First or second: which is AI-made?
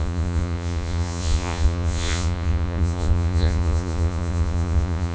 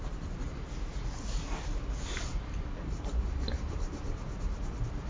first